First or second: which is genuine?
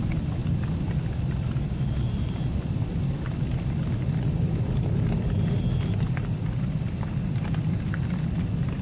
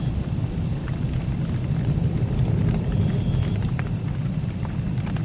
first